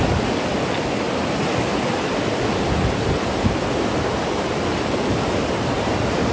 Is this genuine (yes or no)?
yes